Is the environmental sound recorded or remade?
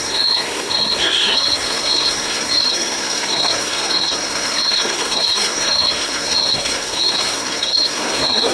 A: remade